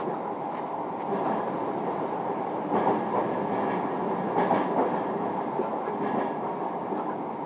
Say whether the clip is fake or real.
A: real